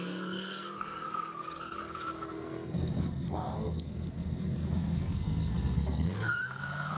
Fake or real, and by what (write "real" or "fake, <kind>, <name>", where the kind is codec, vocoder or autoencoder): fake, codec, SNAC